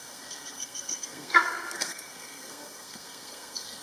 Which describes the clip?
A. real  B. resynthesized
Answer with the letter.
B